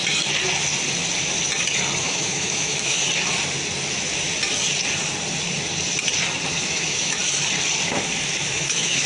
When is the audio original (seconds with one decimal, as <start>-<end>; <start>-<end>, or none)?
0.0-2.0; 3.0-6.6; 7.2-8.5